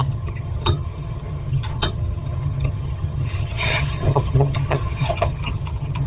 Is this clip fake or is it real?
fake